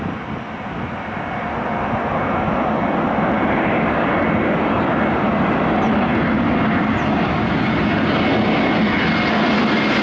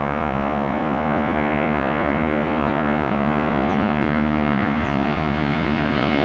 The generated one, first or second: second